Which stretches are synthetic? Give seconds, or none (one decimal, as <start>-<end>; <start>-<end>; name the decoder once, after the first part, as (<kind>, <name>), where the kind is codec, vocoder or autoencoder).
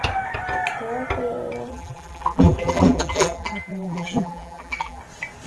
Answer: 1.7-5.0 (vocoder, BigVGAN v2)